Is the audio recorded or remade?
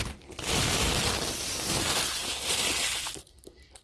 recorded